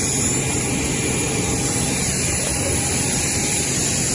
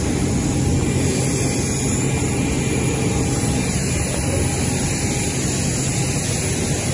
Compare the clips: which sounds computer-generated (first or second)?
first